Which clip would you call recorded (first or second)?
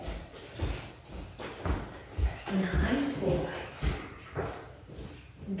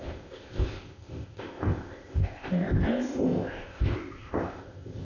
first